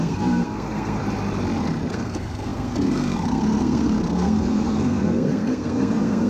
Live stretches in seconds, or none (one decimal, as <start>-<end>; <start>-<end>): 1.0-1.9